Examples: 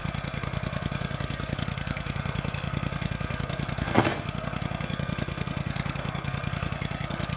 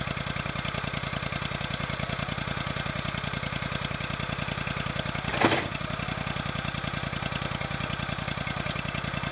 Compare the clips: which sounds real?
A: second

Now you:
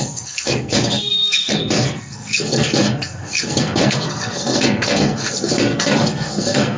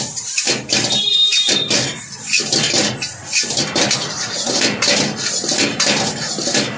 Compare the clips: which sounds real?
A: second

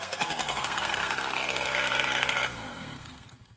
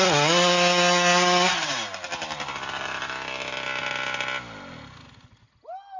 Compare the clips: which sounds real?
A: second